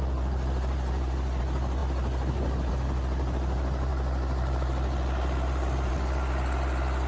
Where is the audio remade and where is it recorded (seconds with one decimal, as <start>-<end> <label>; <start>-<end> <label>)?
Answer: 0.0-3.9 recorded; 3.9-5.9 remade; 5.9-7.1 recorded